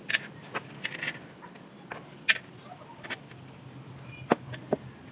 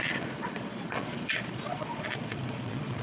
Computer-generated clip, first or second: second